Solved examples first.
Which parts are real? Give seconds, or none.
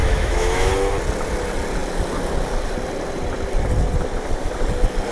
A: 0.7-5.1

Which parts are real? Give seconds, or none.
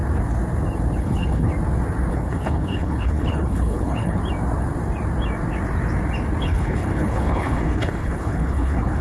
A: 0.0-1.0; 1.5-2.1; 4.2-6.4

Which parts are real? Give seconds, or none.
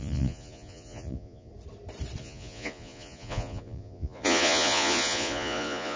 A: 1.5-2.2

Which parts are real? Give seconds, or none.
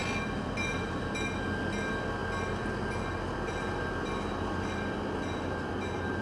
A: 0.0-6.2